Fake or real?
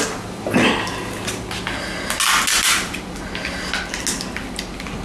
real